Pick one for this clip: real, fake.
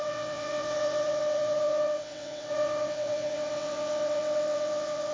fake